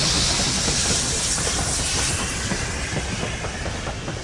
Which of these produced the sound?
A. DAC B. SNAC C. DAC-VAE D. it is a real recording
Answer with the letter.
D